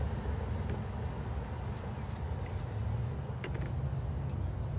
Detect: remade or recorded recorded